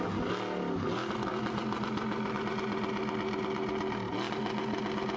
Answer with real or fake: real